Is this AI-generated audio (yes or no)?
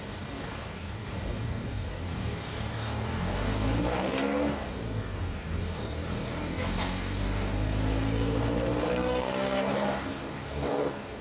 yes